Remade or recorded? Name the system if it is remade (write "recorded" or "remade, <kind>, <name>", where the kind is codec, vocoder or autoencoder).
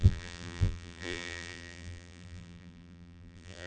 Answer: remade, vocoder, BigVGAN v2